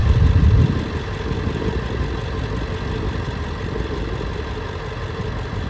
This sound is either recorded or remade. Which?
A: recorded